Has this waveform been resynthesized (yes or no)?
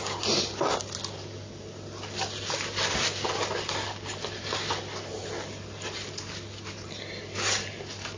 no